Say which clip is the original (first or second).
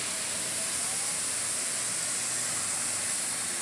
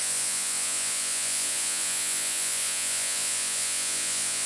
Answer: first